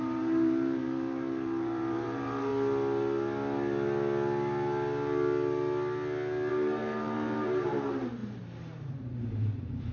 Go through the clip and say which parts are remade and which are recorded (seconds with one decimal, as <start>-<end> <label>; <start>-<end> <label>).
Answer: 0.0-2.5 remade; 2.5-6.5 recorded; 6.5-9.9 remade